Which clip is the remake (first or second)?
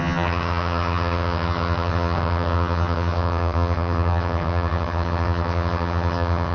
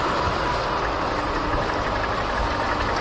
first